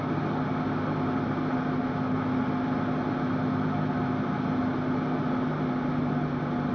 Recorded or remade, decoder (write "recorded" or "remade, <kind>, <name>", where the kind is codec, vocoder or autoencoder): recorded